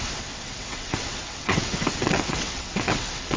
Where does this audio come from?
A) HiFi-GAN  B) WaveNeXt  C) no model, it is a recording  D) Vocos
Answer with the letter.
B